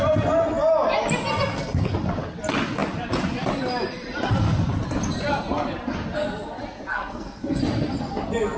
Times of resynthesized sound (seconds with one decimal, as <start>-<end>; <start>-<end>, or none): 6.9-7.6